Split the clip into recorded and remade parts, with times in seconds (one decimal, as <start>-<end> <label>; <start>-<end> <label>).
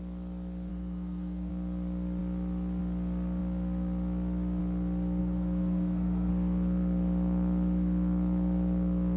0.0-0.7 recorded; 0.7-1.5 remade; 1.5-5.2 recorded; 5.2-6.3 remade; 6.3-9.2 recorded